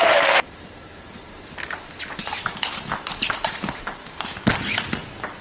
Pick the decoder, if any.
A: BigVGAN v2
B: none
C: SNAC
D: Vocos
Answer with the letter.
B